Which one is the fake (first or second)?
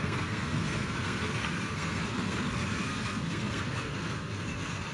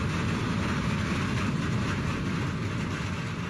first